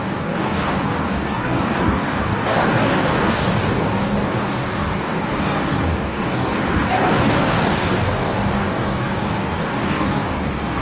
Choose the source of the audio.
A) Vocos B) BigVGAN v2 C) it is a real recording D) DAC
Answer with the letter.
D